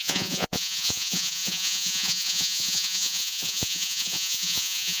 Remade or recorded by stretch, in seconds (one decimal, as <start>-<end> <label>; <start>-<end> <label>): 0.0-5.0 remade